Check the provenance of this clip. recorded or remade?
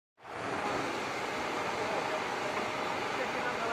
recorded